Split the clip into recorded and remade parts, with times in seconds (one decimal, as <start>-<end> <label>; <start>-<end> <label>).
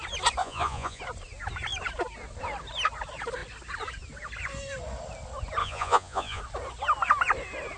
0.0-0.4 recorded; 0.4-1.0 remade; 1.0-5.6 recorded; 5.6-6.4 remade; 6.4-7.8 recorded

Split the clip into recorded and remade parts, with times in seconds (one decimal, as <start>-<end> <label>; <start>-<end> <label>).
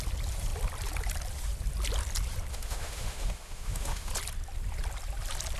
0.0-2.5 recorded; 2.5-4.1 remade; 4.1-5.6 recorded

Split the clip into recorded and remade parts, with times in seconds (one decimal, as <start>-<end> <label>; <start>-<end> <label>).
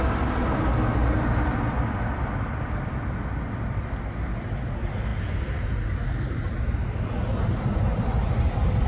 0.0-5.1 recorded; 5.1-5.6 remade; 5.6-8.9 recorded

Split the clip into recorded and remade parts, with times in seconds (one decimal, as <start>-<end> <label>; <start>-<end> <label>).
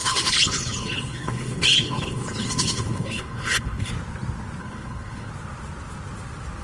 0.0-3.9 remade; 3.9-4.6 recorded; 4.6-5.3 remade; 5.3-6.6 recorded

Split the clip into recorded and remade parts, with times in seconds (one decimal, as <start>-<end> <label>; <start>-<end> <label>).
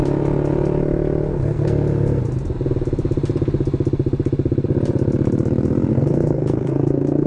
0.0-1.3 recorded; 1.3-2.2 remade; 2.2-5.9 recorded; 5.9-7.3 remade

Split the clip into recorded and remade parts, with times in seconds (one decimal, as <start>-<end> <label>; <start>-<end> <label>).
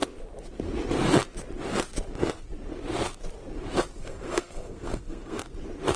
0.0-4.0 recorded; 4.0-5.4 remade; 5.4-6.0 recorded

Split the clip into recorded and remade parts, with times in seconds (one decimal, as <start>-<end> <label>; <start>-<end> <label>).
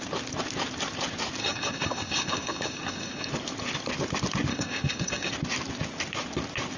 0.0-1.4 recorded; 1.4-3.3 remade; 3.3-4.5 recorded; 4.5-5.3 remade; 5.3-6.8 recorded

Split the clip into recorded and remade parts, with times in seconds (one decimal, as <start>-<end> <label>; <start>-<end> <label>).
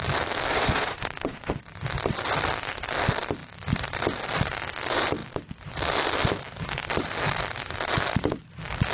0.0-0.5 recorded; 0.5-1.6 remade; 1.6-8.9 recorded